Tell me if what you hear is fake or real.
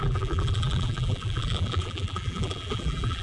fake